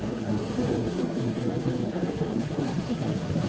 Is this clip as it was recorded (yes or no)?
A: no